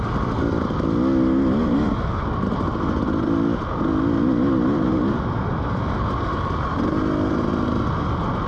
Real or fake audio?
real